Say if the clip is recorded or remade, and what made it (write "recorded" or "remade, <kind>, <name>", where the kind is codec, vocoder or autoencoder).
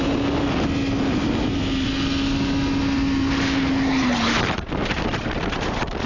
recorded